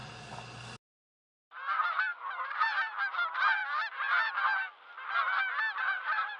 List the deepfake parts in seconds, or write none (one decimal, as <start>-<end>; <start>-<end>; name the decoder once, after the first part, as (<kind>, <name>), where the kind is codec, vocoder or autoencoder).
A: 1.0-3.6 (vocoder, BigVGAN v2); 5.8-6.4